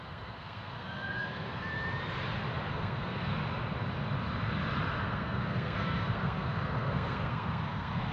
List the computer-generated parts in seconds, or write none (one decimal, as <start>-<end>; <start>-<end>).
0.0-1.7; 2.7-3.3; 5.0-8.1